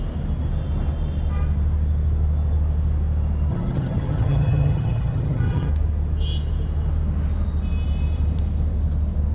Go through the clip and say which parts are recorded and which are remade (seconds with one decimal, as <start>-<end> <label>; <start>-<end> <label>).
0.0-3.5 recorded; 3.5-5.7 remade; 5.7-9.3 recorded